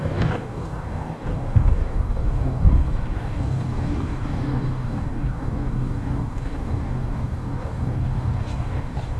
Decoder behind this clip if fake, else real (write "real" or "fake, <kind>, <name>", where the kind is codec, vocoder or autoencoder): fake, codec, DAC